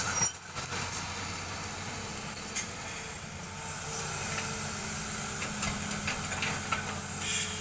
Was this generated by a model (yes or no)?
no